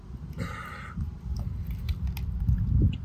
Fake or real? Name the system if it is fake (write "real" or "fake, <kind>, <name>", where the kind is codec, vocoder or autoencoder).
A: real